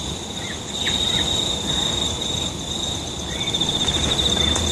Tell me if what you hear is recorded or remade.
recorded